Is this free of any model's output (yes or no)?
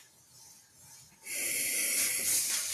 yes